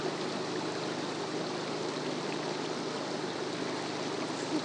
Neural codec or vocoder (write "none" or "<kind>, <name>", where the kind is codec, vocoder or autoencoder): none